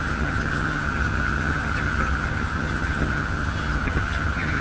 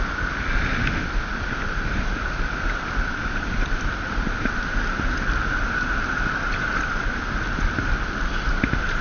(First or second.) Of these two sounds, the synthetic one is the first